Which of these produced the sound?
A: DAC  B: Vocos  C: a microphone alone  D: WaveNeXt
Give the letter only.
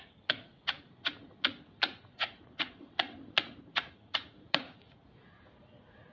B